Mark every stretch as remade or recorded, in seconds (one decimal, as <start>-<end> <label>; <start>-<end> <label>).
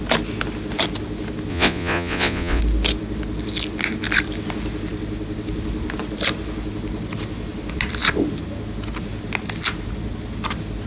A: 0.0-1.5 recorded; 1.5-2.6 remade; 2.6-10.9 recorded